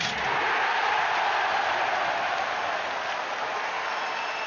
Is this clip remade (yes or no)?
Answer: no